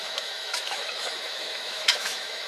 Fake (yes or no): yes